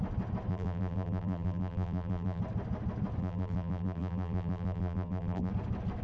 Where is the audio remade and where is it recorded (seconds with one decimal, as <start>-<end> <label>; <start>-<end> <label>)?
0.0-0.5 recorded; 0.5-2.4 remade; 2.4-3.2 recorded; 3.2-5.5 remade; 5.5-6.0 recorded